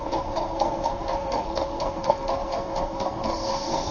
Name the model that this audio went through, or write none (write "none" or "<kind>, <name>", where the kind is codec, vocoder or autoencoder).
codec, SNAC